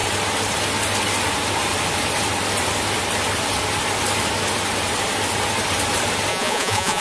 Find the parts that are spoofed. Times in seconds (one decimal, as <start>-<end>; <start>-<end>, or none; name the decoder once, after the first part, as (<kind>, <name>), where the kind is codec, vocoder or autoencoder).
6.3-7.0 (vocoder, Vocos)